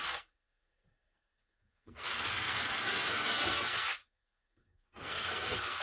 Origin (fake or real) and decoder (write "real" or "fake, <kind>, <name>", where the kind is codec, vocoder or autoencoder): fake, codec, SNAC